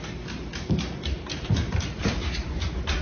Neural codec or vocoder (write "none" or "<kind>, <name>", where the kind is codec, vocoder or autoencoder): vocoder, BigVGAN v2